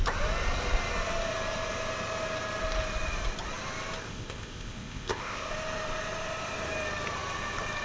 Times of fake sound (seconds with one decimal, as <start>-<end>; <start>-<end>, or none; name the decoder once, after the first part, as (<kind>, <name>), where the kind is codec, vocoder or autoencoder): 4.0-5.5 (codec, ZipCodec)